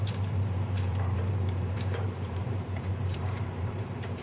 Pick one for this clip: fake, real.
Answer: fake